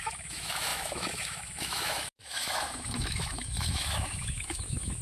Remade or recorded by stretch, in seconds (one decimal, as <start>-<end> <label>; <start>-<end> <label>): 0.0-5.0 remade